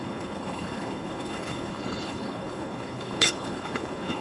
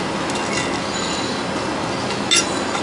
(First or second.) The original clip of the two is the second